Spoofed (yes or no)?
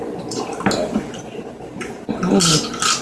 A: no